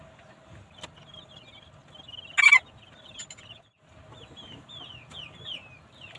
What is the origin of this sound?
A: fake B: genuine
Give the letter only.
B